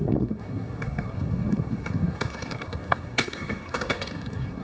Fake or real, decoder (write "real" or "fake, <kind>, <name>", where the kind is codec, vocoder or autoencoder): fake, codec, SNAC